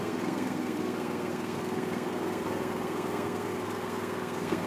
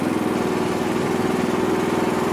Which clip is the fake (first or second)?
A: first